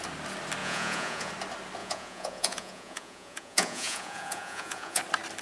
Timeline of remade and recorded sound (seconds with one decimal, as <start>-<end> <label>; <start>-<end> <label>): 0.0-0.6 recorded; 0.6-1.3 remade; 1.3-1.8 recorded; 1.8-5.0 remade; 5.0-5.4 recorded